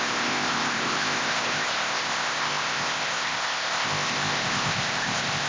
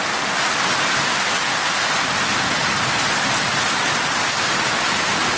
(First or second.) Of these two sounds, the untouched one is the second